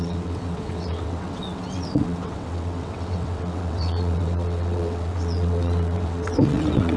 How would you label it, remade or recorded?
remade